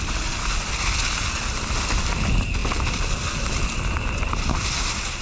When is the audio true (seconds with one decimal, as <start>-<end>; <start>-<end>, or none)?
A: 0.0-5.2